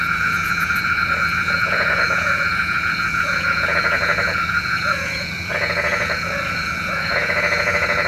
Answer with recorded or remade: remade